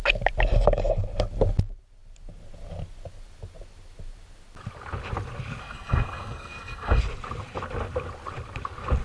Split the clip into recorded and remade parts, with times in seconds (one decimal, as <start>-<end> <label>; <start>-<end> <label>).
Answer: 0.0-5.6 recorded; 5.6-7.0 remade; 7.0-9.0 recorded